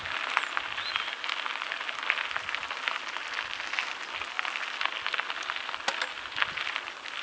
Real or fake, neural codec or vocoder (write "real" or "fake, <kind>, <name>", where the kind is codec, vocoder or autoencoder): real